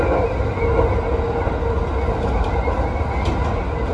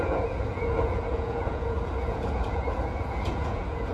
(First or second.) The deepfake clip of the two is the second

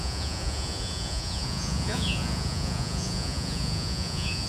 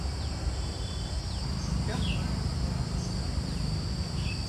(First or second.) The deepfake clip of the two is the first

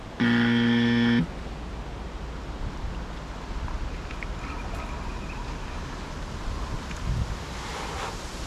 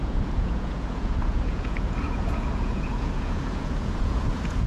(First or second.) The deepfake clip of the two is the second